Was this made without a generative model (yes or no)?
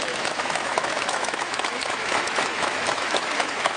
no